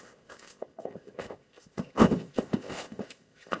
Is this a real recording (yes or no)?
no